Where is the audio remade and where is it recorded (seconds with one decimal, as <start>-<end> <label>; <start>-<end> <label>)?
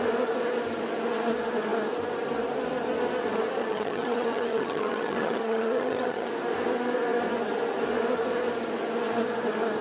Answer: 0.0-3.6 recorded; 3.6-6.3 remade; 6.3-9.8 recorded